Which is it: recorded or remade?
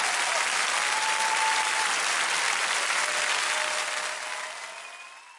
recorded